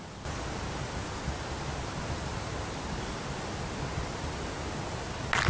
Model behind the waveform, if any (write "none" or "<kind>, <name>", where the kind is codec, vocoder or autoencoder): none